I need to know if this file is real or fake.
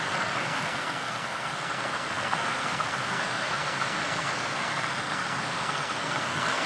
fake